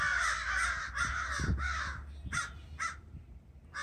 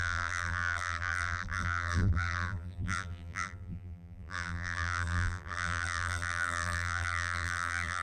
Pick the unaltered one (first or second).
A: first